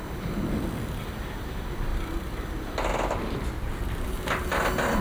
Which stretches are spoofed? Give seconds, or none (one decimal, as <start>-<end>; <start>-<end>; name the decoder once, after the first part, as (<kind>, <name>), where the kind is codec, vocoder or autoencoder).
none